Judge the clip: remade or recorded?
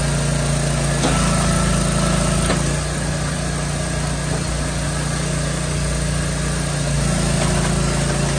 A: recorded